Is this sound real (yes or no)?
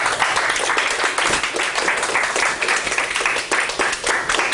yes